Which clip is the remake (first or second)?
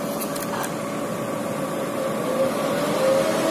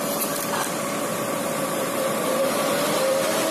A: second